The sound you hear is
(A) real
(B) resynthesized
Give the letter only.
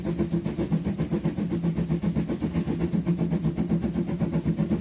A